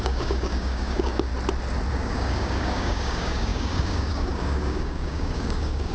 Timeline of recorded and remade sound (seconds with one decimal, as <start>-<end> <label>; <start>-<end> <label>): 0.0-1.3 remade; 1.3-1.9 recorded; 1.9-5.9 remade